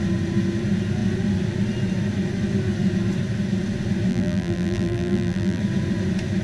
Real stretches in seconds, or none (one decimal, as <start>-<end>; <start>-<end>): 0.0-4.1; 5.6-6.4